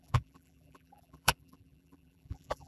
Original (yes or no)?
no